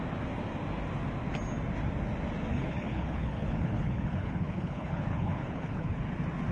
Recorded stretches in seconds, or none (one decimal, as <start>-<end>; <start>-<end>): 0.0-2.5; 6.1-6.5